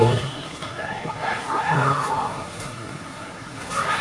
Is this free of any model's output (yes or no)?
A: no